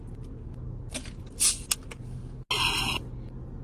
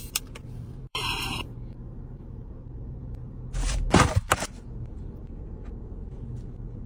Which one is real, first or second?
first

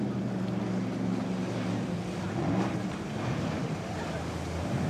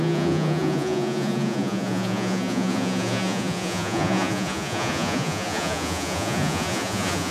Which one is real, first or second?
first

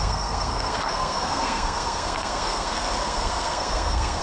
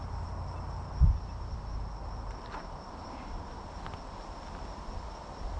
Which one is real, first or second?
second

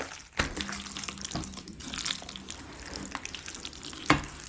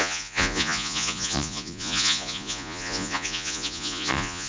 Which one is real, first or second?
first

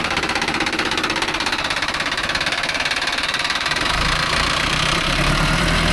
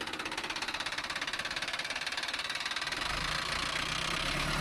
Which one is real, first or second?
second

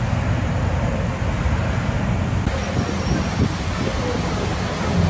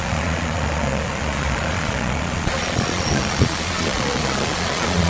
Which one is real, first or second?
first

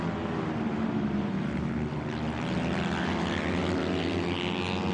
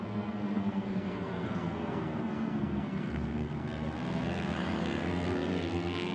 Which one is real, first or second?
first